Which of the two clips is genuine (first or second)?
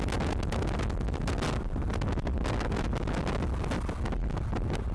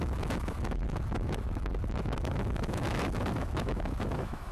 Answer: first